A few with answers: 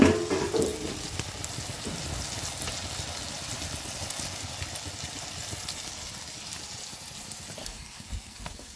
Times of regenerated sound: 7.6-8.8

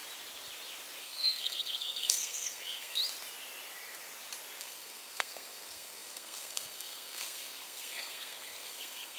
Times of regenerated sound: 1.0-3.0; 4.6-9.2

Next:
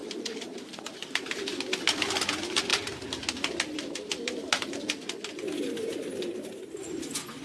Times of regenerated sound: 0.0-0.8